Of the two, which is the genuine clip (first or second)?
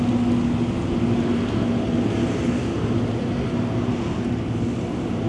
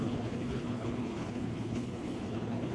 first